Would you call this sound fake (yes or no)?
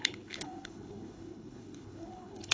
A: yes